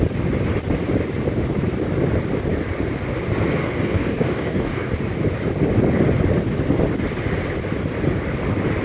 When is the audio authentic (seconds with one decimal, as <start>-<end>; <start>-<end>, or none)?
0.0-3.6; 4.9-8.8